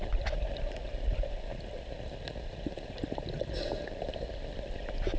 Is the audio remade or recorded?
recorded